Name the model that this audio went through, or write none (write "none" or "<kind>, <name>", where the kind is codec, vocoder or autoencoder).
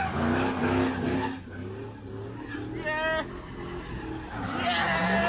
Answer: none